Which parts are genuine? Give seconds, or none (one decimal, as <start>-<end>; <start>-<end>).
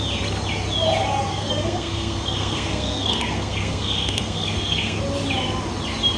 0.0-1.3; 5.0-6.2